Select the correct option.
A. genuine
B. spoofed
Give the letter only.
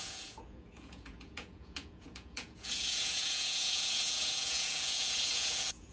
B